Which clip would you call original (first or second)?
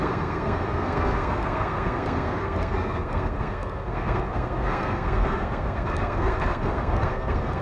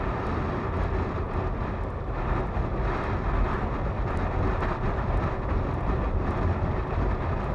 second